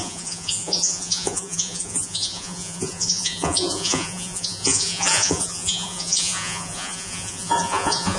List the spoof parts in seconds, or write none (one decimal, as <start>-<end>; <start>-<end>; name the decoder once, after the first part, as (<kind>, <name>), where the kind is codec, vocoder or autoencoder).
0.0-8.2 (vocoder, Vocos)